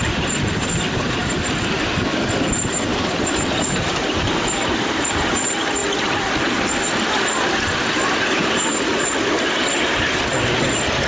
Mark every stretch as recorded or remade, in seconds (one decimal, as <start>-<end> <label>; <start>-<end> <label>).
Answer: 0.0-2.9 recorded; 2.9-4.9 remade; 4.9-11.1 recorded